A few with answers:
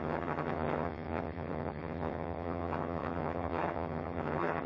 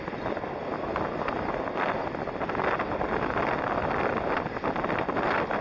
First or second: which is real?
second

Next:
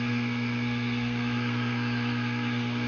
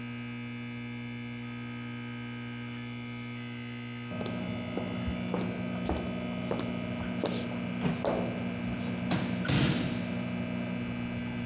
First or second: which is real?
second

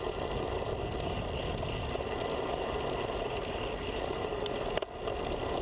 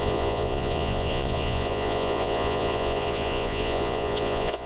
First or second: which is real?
first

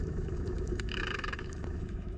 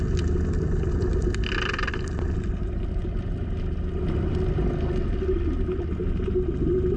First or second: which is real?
second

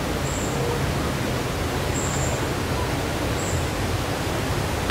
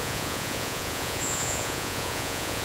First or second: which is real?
first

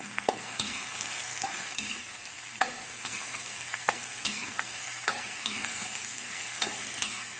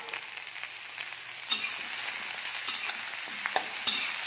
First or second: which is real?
second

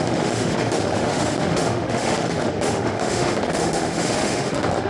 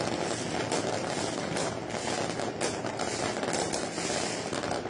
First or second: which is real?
second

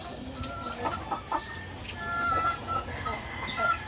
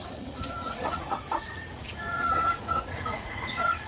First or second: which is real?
first